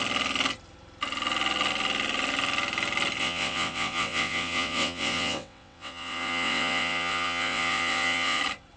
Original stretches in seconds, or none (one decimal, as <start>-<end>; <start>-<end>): 0.0-3.2; 8.4-8.8